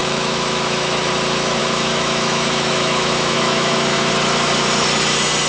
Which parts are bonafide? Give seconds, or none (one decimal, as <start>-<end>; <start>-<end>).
1.1-1.6; 4.1-5.5